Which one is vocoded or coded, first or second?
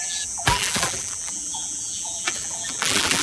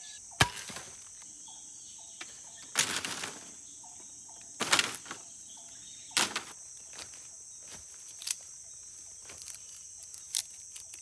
first